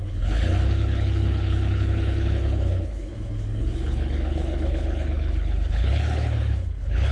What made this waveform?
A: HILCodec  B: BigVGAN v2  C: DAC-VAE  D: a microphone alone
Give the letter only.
A